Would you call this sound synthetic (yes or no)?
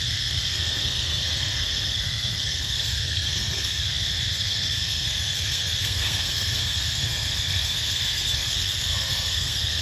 yes